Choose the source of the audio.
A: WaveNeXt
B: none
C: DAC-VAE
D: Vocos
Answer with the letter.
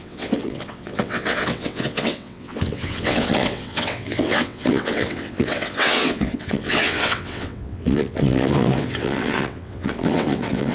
A